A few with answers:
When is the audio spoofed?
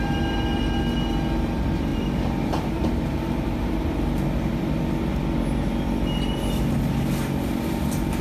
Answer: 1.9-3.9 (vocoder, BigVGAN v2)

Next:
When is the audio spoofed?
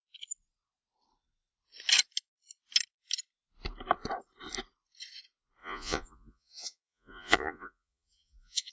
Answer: 5.6-8.7 (vocoder, Vocos)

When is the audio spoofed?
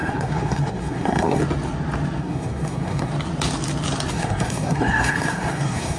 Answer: 0.0-1.4 (codec, SNAC); 2.2-3.1; 4.1-6.0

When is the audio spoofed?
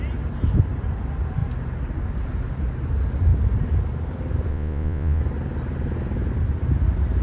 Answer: 4.5-5.2 (vocoder, Vocos)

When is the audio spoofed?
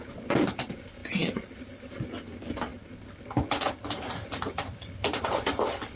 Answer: 1.0-2.1 (vocoder, BigVGAN v2); 2.7-5.2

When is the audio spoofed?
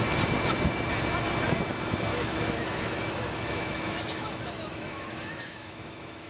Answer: 2.1-6.3 (autoencoder, DAC-VAE)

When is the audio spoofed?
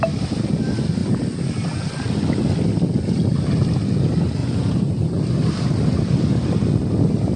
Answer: 4.4-5.2 (vocoder, Vocos)